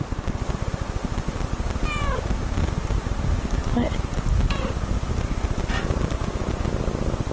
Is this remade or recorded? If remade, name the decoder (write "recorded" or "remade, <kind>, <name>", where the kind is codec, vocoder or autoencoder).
recorded